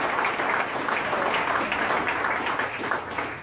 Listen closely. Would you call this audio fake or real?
real